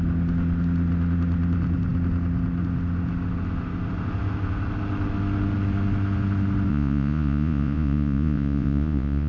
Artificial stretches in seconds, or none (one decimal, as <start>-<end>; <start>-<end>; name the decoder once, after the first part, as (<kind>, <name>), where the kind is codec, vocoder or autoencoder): 6.7-9.3 (vocoder, Vocos)